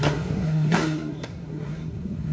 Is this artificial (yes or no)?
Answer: yes